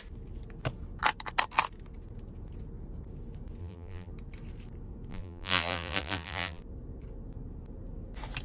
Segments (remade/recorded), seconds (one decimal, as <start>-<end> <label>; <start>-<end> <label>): 0.0-3.6 recorded; 3.6-4.1 remade; 4.1-5.1 recorded; 5.1-6.6 remade; 6.6-8.4 recorded